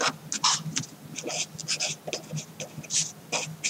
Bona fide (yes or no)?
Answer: yes